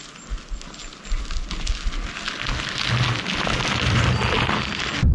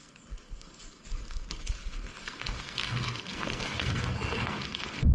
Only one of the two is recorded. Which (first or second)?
first